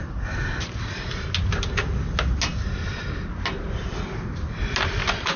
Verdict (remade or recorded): recorded